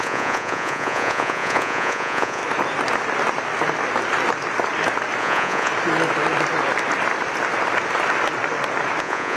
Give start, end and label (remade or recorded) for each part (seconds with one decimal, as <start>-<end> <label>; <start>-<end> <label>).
0.0-2.4 remade; 2.4-5.2 recorded; 5.2-5.7 remade; 5.7-9.0 recorded; 9.0-9.4 remade